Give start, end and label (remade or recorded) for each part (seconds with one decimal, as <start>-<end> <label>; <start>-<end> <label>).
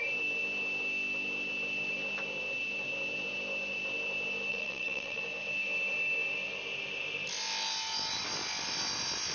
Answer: 0.0-4.5 recorded; 4.5-5.2 remade; 5.2-9.3 recorded